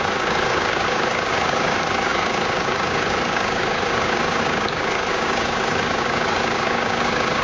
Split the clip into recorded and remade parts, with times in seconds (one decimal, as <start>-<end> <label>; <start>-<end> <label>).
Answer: 0.0-7.4 remade